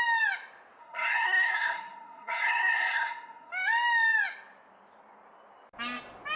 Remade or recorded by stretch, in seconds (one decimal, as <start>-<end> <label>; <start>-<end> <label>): 0.0-0.8 recorded; 0.8-3.5 remade; 3.5-6.4 recorded